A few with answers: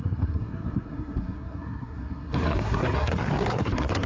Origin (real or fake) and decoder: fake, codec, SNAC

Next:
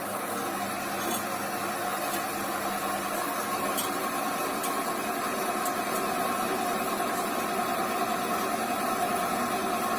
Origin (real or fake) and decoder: real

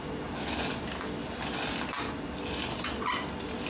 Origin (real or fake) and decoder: real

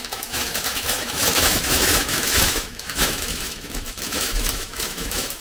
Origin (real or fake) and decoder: fake, autoencoder, DAC-VAE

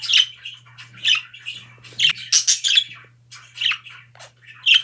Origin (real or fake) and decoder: real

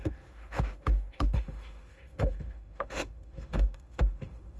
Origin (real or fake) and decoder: fake, autoencoder, DAC-VAE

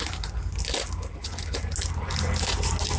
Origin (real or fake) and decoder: real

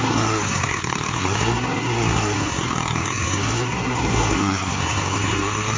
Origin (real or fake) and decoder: fake, codec, SNAC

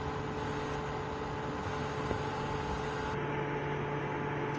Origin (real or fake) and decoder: real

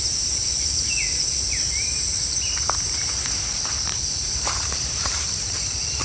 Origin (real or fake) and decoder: fake, vocoder, BigVGAN v2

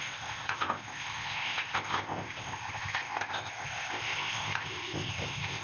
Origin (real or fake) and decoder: fake, codec, ZipCodec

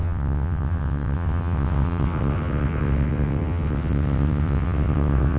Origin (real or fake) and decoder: fake, vocoder, WaveNeXt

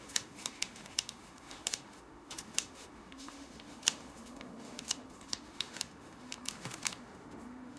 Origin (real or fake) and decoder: fake, autoencoder, DAC-VAE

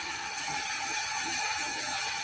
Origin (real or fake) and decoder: fake, vocoder, HiFi-GAN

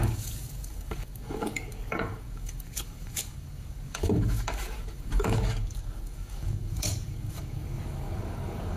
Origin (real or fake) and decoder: fake, codec, DAC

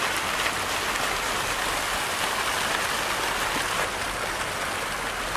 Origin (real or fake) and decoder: real